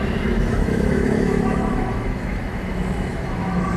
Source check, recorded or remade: remade